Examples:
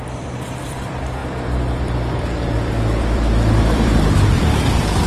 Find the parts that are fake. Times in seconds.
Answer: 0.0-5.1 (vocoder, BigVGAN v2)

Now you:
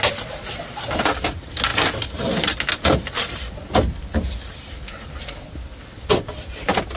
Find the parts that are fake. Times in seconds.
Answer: none

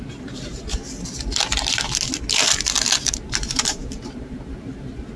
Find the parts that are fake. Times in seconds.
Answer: 0.0-0.8 (vocoder, BigVGAN v2); 3.1-5.2

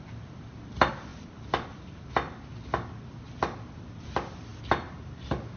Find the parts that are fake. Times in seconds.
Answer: 1.1-2.1 (vocoder, BigVGAN v2)

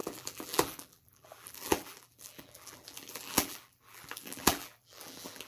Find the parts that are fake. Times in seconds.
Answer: 0.0-5.5 (vocoder, BigVGAN v2)

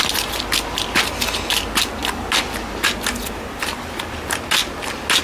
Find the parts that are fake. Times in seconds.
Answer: 0.0-2.0 (vocoder, BigVGAN v2)

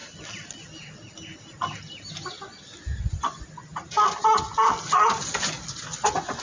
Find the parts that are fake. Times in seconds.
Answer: none

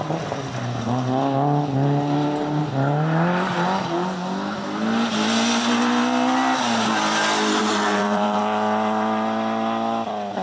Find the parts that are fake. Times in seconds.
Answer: 7.6-8.4 (vocoder, BigVGAN v2)